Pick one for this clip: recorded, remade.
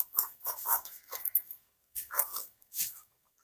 remade